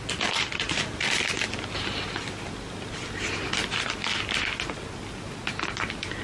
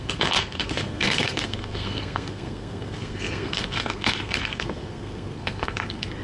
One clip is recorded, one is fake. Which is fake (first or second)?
second